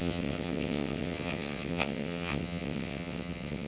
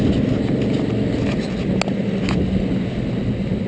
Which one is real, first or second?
second